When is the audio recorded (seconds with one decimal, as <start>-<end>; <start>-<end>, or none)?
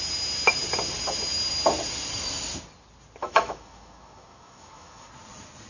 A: 0.0-3.2; 5.1-5.7